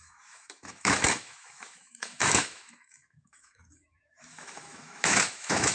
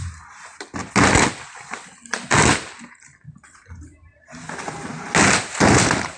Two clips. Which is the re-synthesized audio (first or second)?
first